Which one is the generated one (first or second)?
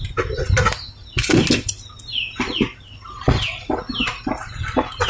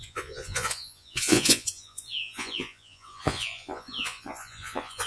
second